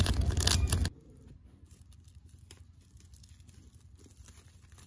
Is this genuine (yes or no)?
yes